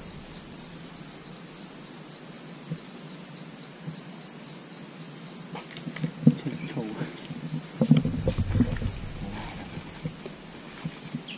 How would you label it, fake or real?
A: real